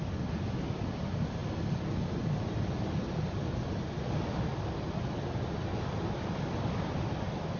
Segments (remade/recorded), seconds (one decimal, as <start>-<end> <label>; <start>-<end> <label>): 0.0-7.6 recorded